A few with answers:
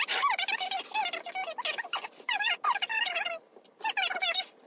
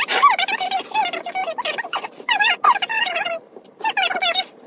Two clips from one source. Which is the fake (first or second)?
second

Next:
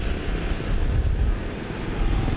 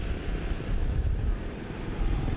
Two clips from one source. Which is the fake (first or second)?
second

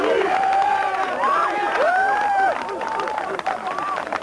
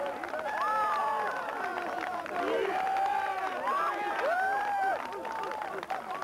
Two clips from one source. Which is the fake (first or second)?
first